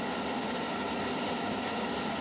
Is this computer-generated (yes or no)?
no